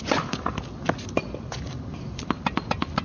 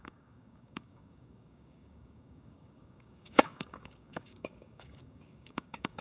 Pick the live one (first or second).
first